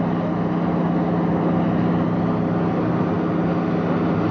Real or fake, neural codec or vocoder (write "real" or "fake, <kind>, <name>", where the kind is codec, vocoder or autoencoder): real